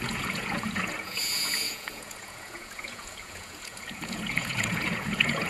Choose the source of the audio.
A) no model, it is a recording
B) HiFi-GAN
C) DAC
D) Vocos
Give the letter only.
D